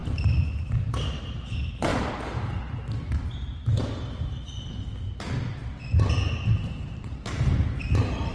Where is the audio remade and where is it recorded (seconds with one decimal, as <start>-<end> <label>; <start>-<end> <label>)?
0.0-0.6 recorded; 0.6-1.9 remade; 1.9-6.1 recorded; 6.1-8.3 remade